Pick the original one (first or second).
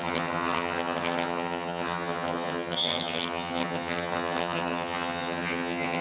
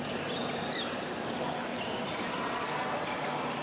second